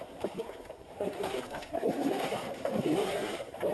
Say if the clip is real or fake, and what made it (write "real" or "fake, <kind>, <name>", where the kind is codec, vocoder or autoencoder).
fake, codec, SNAC